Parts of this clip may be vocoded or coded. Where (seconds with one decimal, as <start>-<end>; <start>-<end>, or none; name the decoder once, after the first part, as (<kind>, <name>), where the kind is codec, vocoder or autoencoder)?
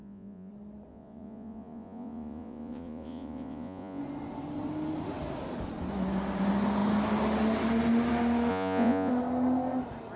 0.0-0.5 (vocoder, Vocos); 0.9-4.0; 8.5-9.1